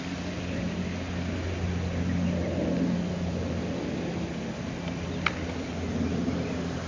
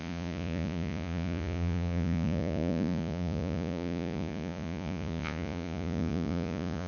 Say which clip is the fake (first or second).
second